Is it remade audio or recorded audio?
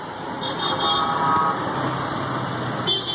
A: recorded